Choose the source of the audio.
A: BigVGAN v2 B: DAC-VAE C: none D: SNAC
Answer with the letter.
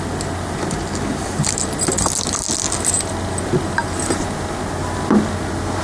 C